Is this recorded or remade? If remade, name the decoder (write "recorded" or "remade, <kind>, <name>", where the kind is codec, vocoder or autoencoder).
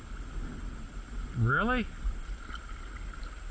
recorded